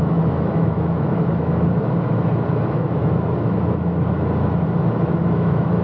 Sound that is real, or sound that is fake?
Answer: fake